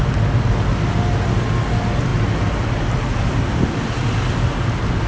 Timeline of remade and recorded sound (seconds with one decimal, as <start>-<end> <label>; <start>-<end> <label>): 0.0-5.1 recorded